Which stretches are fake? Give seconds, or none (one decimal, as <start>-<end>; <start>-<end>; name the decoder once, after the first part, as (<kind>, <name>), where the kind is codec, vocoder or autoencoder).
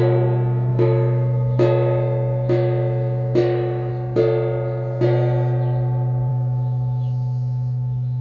0.7-3.9 (autoencoder, DAC-VAE); 6.3-8.2